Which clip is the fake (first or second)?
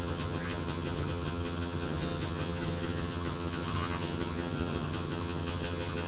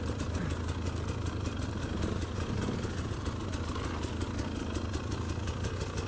first